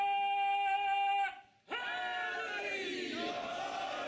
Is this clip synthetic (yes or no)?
no